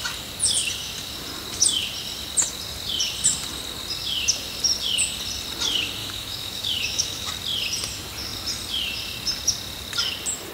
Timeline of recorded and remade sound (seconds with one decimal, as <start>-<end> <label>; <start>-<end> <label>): 0.0-6.0 recorded; 6.0-7.3 remade; 7.3-10.5 recorded